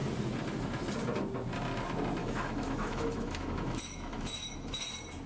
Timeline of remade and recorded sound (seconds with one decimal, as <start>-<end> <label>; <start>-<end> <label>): 0.0-2.2 recorded; 2.2-4.8 remade; 4.8-5.3 recorded